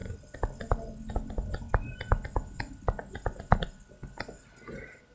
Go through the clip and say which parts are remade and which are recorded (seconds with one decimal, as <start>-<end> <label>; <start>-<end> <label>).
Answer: 0.0-5.1 recorded